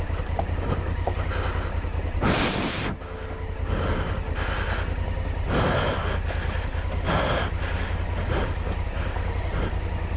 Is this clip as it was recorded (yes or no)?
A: yes